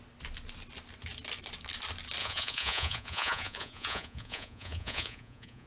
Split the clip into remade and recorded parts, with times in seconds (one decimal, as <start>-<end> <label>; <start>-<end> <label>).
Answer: 0.0-2.2 recorded; 2.2-5.7 remade